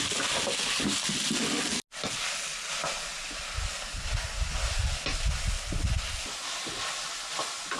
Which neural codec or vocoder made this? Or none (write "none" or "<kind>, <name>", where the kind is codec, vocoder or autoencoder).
none